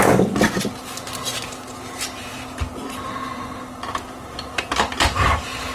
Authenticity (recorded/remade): recorded